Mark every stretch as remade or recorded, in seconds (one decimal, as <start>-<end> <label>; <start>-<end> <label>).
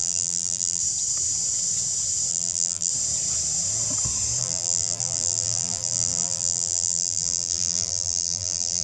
0.0-0.8 remade; 0.8-2.3 recorded; 2.3-2.9 remade; 2.9-4.4 recorded; 4.4-8.8 remade